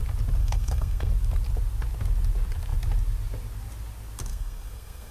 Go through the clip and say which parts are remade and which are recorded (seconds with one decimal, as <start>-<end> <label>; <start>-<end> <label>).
0.0-0.4 recorded; 0.4-1.1 remade; 1.1-4.3 recorded; 4.3-5.1 remade